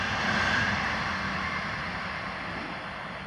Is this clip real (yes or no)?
yes